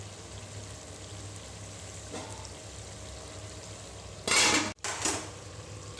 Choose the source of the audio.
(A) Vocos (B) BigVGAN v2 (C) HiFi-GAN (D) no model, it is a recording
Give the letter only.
D